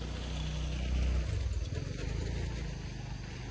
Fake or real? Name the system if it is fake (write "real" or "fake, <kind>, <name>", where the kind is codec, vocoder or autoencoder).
real